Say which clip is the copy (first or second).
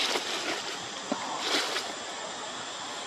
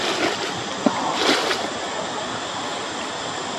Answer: second